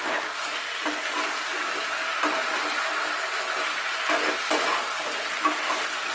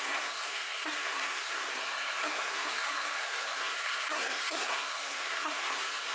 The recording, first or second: first